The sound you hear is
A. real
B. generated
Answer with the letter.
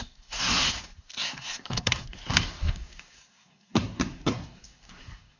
B